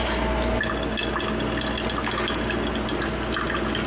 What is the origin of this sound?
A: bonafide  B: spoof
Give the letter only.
A